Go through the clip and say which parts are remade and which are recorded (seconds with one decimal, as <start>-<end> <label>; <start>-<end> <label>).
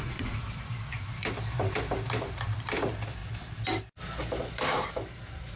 0.0-3.2 remade; 3.2-4.5 recorded; 4.5-5.6 remade